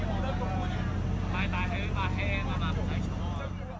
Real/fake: real